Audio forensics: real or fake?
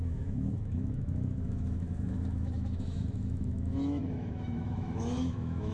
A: fake